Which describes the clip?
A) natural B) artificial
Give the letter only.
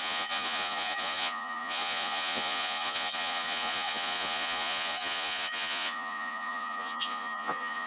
B